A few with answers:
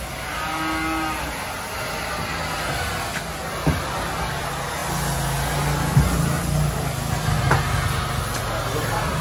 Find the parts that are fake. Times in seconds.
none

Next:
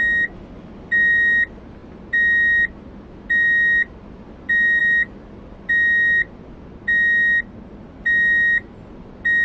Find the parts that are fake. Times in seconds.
none

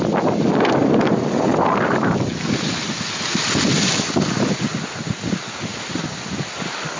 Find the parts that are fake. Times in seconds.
none